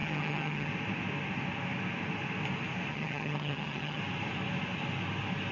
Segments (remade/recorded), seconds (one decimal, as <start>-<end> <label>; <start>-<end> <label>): 0.0-0.7 remade; 0.7-2.9 recorded; 2.9-4.0 remade; 4.0-5.5 recorded